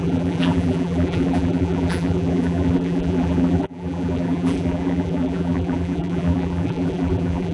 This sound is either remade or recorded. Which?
remade